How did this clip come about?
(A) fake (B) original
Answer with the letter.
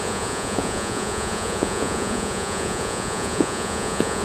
A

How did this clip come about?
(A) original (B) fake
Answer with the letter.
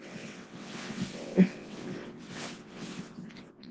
B